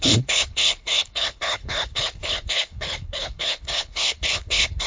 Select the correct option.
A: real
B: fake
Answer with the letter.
B